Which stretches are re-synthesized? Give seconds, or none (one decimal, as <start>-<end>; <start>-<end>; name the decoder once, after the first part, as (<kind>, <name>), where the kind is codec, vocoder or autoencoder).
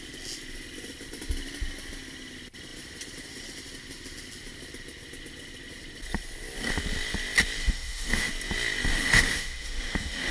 7.6-8.3 (autoencoder, DAC-VAE); 8.9-10.3